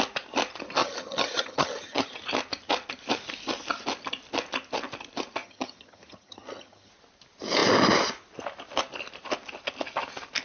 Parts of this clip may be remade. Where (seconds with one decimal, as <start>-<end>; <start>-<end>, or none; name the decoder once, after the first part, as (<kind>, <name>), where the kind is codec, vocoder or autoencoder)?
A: 0.8-2.2 (vocoder, HiFi-GAN); 5.4-6.9